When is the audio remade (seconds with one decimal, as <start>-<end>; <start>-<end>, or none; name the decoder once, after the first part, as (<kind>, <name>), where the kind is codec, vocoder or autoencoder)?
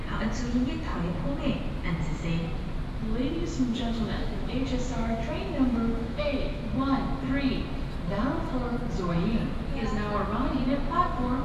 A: 3.7-6.6 (autoencoder, DAC-VAE)